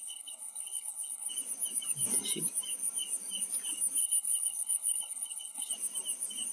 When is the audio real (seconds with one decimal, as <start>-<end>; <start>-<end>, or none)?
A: 1.3-4.0; 5.7-6.5